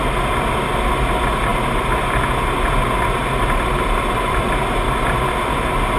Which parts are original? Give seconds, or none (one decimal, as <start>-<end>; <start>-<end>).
0.0-6.0